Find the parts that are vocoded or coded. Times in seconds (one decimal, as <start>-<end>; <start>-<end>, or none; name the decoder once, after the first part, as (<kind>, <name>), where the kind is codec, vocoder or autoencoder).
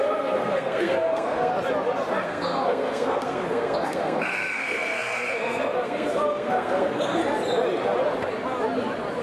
0.0-1.5 (codec, SNAC); 2.2-7.2